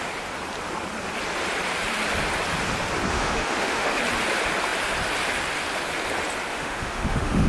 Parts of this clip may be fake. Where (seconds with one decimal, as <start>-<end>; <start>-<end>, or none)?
3.1-4.0; 6.5-7.5